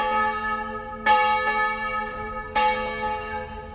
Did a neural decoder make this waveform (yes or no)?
no